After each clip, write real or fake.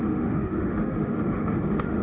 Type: fake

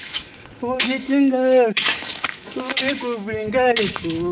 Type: fake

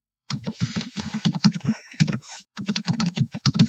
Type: fake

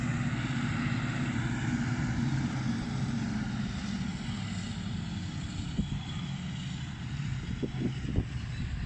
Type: real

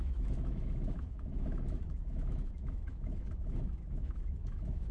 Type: fake